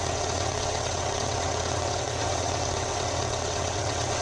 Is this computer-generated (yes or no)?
yes